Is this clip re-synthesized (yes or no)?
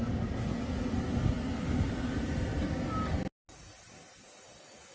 no